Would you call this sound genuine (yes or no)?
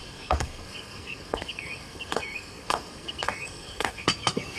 no